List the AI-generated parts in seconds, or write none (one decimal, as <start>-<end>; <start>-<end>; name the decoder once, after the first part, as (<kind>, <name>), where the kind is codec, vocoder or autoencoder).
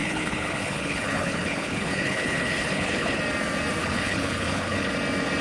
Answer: 0.0-3.2 (codec, HILCodec); 3.8-4.9